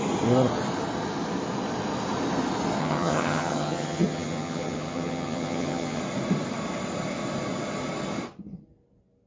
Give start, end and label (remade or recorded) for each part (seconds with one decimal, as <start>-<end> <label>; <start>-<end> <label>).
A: 0.0-2.8 recorded; 2.8-6.0 remade; 6.0-9.3 recorded